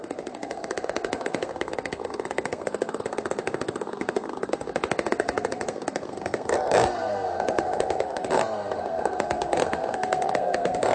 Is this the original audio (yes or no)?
no